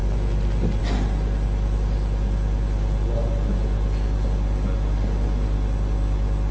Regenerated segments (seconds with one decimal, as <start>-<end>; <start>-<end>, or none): none